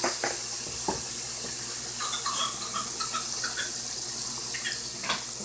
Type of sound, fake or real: real